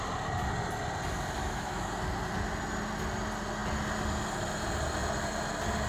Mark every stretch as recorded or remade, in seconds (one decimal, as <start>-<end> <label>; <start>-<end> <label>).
0.0-1.4 recorded; 1.4-1.9 remade; 1.9-5.9 recorded